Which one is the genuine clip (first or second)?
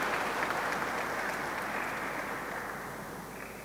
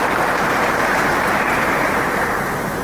first